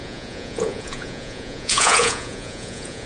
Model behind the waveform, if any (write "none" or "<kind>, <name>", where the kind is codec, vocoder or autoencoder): vocoder, Vocos